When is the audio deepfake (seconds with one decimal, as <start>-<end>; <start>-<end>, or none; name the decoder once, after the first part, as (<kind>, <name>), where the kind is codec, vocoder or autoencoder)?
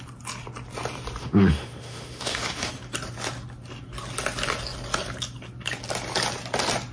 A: 1.2-2.7 (autoencoder, DAC-VAE)